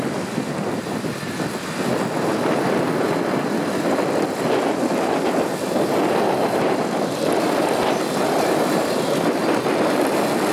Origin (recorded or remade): recorded